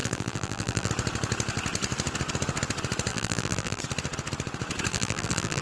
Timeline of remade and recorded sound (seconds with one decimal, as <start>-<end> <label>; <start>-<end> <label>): 0.0-0.9 remade; 0.9-3.1 recorded; 3.1-3.8 remade; 3.8-4.9 recorded; 4.9-5.6 remade